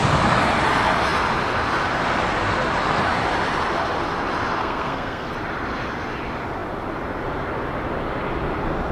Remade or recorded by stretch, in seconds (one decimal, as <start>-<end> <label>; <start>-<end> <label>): 0.0-4.6 recorded; 4.6-5.3 remade; 5.3-8.9 recorded